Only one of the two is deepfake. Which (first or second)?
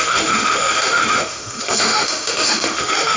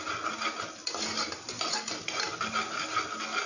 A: first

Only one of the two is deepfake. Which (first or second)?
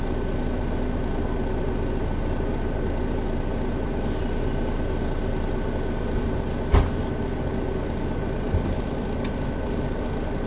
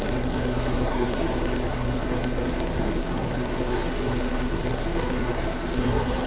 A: second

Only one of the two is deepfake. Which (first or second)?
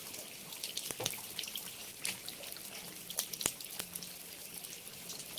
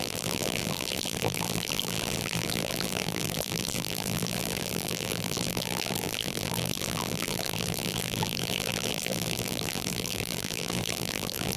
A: second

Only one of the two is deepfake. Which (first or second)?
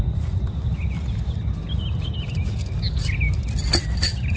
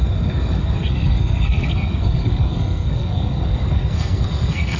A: second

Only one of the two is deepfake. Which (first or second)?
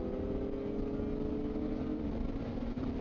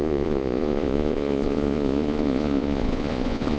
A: second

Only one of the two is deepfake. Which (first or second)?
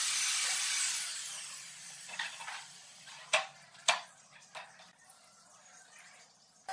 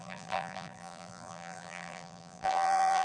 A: second